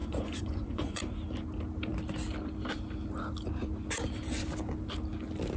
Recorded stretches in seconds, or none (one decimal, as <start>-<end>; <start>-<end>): 1.0-5.6